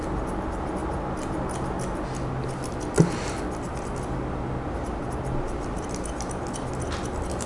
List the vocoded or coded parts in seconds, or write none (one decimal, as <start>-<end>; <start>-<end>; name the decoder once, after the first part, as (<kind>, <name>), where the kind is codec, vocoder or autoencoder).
none